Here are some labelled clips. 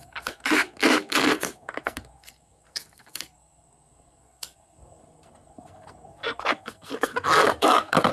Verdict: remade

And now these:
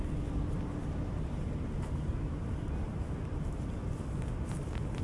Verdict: recorded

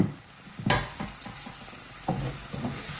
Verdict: recorded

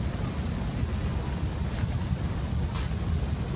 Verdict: recorded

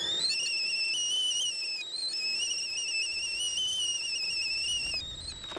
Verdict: recorded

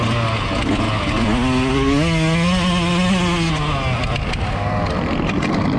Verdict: recorded